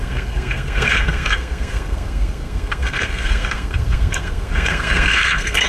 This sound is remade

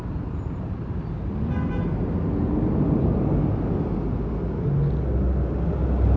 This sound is recorded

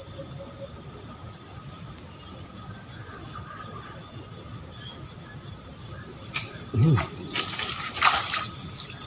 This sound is recorded